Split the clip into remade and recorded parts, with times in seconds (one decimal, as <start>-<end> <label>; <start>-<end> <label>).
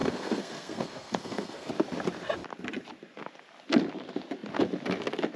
0.0-1.7 remade; 1.7-5.4 recorded